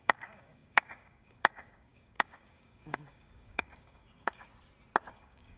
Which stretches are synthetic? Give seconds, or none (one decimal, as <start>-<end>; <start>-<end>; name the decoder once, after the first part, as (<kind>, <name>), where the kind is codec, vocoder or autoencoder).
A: 0.0-4.5 (codec, DAC); 5.0-5.6